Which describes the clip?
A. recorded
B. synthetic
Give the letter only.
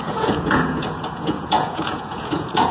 B